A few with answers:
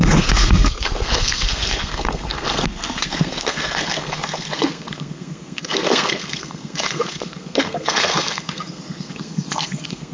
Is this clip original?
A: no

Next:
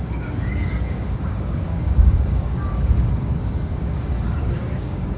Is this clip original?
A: no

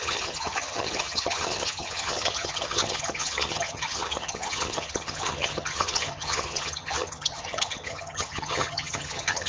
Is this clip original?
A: no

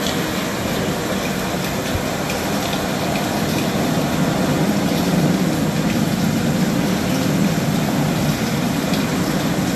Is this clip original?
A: yes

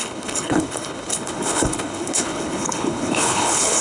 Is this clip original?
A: no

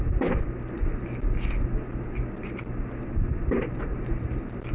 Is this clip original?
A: yes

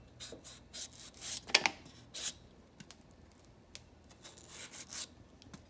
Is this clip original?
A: yes